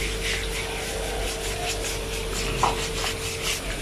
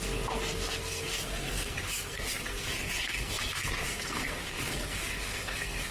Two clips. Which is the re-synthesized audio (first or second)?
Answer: second